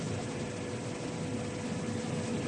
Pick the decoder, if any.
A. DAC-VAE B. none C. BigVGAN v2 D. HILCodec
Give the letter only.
B